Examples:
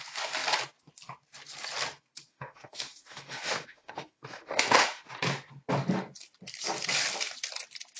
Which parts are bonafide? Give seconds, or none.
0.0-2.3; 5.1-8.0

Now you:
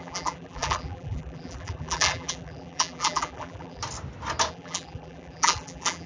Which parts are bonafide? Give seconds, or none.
3.8-4.5

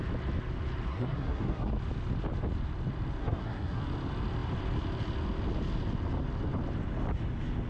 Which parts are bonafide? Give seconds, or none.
0.0-0.9; 1.7-3.2; 3.8-7.7

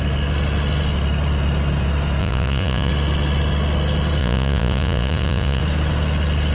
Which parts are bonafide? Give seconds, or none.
0.0-2.2; 2.9-4.2; 5.6-6.5

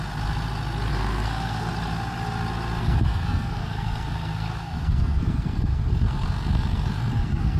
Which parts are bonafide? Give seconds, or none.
0.0-0.9; 1.7-2.8

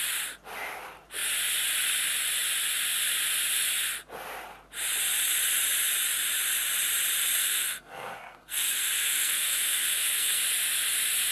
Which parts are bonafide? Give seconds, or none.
0.0-7.4; 10.4-11.3